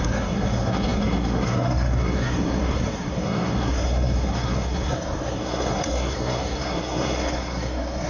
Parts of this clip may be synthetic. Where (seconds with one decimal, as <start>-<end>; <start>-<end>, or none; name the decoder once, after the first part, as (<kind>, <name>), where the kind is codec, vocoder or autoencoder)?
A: 0.0-8.1 (codec, SNAC)